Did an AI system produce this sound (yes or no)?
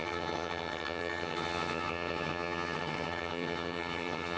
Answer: yes